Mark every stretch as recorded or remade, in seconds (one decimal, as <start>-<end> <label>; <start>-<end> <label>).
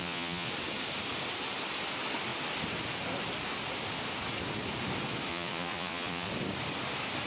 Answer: 0.0-0.5 remade; 0.5-5.3 recorded; 5.3-6.3 remade; 6.3-7.3 recorded